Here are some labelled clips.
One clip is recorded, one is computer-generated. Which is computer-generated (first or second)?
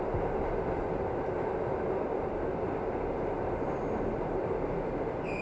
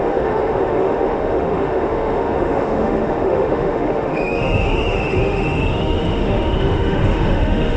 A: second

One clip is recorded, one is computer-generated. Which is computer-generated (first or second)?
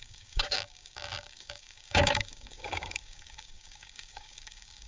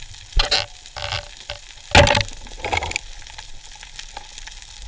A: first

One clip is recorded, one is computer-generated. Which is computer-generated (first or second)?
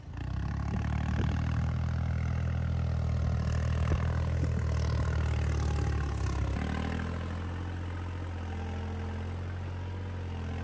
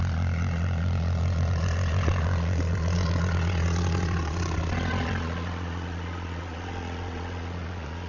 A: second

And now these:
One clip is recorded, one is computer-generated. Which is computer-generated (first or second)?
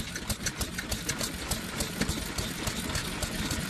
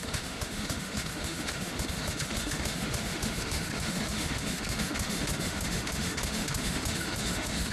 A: second